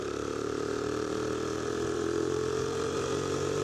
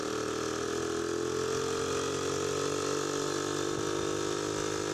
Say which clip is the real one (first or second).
second